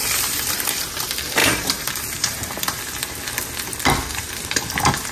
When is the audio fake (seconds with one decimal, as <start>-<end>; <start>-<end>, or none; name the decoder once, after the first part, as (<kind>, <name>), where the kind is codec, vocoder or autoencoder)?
1.4-2.4 (vocoder, BigVGAN v2)